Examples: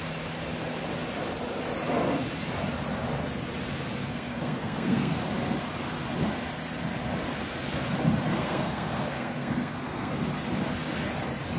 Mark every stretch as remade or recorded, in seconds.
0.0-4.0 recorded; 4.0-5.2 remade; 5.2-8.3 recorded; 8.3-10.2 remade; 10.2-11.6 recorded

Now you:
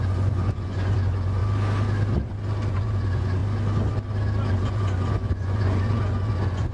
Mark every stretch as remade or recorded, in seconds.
0.0-1.4 remade; 1.4-2.7 recorded; 2.7-3.4 remade; 3.4-4.5 recorded; 4.5-6.7 remade

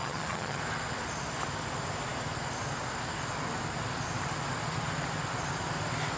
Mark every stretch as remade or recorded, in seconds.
0.0-0.6 remade; 0.6-6.2 recorded

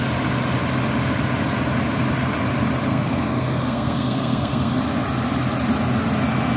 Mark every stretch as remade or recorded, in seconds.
0.0-2.9 recorded; 2.9-4.8 remade; 4.8-6.6 recorded